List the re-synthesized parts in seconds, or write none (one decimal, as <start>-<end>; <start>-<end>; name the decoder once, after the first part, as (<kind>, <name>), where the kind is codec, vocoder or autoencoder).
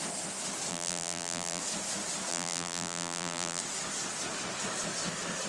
0.7-1.6 (vocoder, BigVGAN v2); 2.3-3.6